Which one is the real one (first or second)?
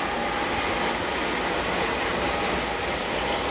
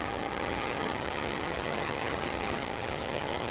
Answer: first